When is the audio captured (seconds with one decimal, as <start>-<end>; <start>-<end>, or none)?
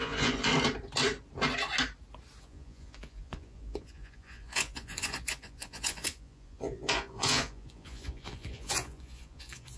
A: 0.5-2.4